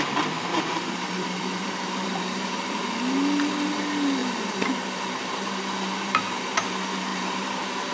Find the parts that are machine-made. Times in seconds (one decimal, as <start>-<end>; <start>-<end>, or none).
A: 0.5-2.9; 4.2-6.4; 7.1-7.9

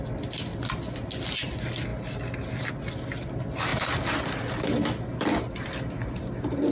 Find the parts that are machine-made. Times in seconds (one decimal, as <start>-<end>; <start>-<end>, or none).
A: 3.7-6.7

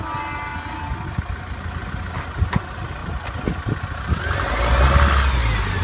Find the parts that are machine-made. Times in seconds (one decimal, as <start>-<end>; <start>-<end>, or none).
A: none

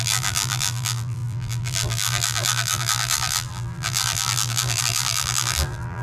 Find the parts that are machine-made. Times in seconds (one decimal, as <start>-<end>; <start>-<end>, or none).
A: 0.0-6.0

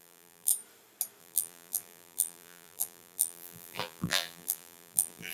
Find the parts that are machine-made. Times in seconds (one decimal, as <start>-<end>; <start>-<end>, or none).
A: 0.0-0.5; 1.2-5.3

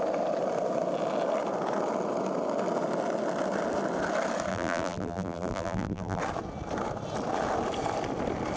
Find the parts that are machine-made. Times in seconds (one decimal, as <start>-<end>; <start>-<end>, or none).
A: 4.5-6.2